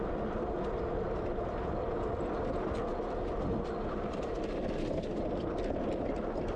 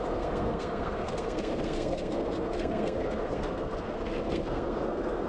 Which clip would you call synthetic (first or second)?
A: second